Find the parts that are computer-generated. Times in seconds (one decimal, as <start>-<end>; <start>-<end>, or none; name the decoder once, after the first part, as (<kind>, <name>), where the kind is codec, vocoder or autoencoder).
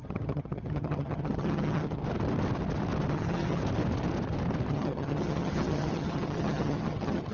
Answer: 0.0-2.0 (vocoder, HiFi-GAN); 3.1-3.6; 4.7-7.3